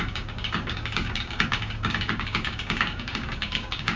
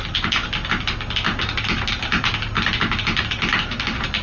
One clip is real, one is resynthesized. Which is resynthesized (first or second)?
first